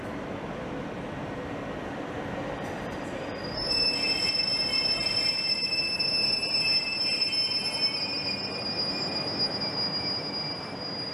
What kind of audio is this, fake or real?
fake